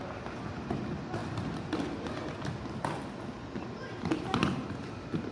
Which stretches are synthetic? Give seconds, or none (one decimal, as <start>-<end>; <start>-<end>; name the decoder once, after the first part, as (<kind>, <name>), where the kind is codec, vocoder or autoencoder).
none